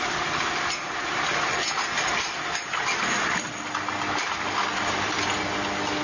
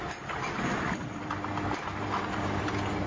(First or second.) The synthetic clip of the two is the second